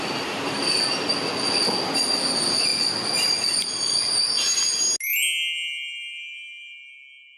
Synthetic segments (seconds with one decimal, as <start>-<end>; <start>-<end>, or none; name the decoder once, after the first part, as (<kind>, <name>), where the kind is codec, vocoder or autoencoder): none